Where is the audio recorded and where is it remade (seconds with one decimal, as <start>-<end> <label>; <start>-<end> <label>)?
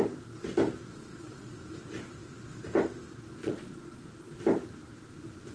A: 0.0-0.9 recorded; 0.9-1.5 remade; 1.5-3.4 recorded; 3.4-4.4 remade; 4.4-5.5 recorded